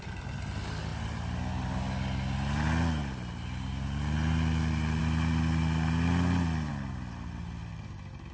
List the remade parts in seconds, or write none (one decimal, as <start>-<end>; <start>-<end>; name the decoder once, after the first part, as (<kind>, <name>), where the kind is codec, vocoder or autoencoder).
none